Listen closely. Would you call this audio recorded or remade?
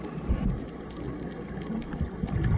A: recorded